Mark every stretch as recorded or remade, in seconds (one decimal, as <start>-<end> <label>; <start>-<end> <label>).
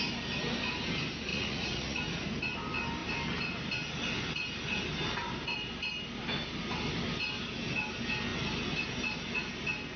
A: 0.0-1.3 recorded; 1.3-2.0 remade; 2.0-10.0 recorded